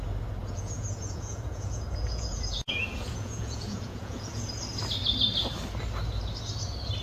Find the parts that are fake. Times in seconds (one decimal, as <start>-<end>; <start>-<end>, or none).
0.4-4.6